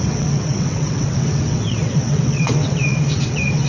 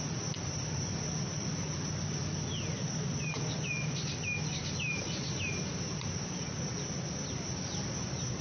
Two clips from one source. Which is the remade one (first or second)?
first